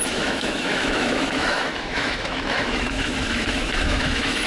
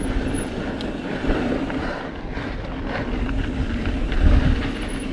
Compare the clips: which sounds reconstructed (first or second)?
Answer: first